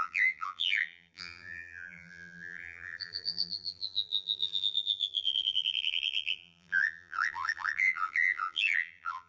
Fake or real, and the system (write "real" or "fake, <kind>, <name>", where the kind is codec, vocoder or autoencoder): fake, vocoder, BigVGAN v2